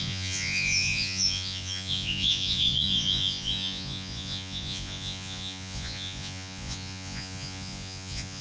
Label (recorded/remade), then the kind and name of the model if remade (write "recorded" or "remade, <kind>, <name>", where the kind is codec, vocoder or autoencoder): remade, vocoder, Vocos